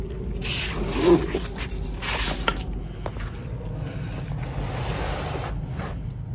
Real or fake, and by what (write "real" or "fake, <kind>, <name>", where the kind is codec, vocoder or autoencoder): real